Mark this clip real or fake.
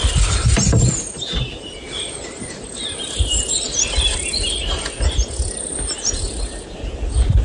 real